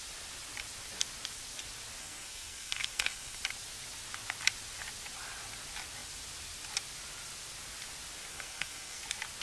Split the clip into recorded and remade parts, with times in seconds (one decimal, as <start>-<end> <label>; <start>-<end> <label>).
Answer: 0.0-2.0 recorded; 2.0-3.4 remade; 3.4-8.3 recorded; 8.3-9.0 remade; 9.0-9.4 recorded